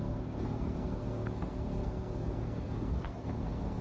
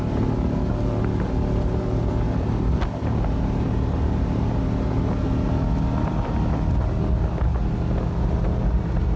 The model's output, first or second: first